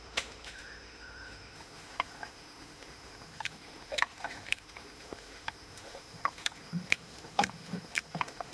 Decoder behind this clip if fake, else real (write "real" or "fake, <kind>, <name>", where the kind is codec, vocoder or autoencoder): fake, autoencoder, DAC-VAE